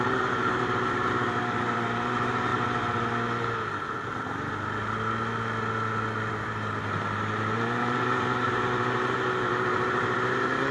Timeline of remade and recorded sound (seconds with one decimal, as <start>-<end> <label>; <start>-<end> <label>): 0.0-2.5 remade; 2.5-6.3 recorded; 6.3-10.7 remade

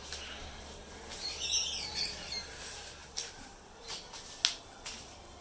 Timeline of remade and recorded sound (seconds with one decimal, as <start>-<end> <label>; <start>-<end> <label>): 0.0-0.4 recorded; 0.4-1.5 remade; 1.5-1.9 recorded; 1.9-2.6 remade; 2.6-3.0 recorded; 3.0-4.0 remade; 4.0-5.4 recorded

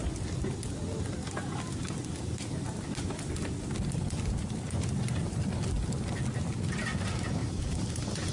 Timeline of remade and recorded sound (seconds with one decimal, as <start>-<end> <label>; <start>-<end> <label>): 0.0-7.4 recorded; 7.4-7.9 remade; 7.9-8.3 recorded

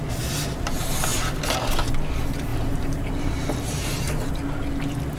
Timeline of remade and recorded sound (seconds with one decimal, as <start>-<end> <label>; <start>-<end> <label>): 0.0-2.5 recorded; 2.5-4.3 remade; 4.3-5.2 recorded

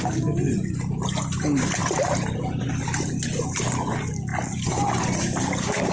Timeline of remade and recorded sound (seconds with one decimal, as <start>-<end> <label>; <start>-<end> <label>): 0.0-1.8 recorded; 1.8-2.6 remade; 2.6-5.9 recorded